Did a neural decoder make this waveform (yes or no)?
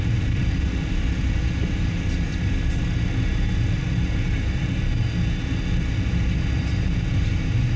no